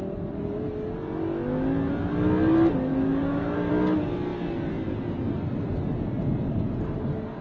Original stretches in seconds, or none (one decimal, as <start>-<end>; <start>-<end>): 0.0-2.9; 3.7-7.4